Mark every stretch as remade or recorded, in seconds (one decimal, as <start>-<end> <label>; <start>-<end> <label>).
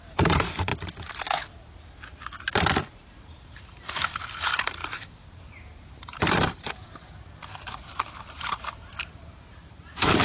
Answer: 0.0-0.7 remade; 0.7-3.2 recorded; 3.2-10.2 remade